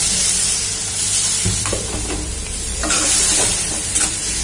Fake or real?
fake